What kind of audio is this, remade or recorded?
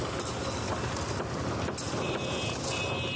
recorded